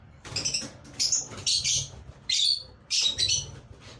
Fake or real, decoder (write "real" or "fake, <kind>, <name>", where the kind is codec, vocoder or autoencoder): fake, vocoder, BigVGAN v2